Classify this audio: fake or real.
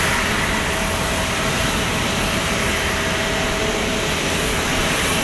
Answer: real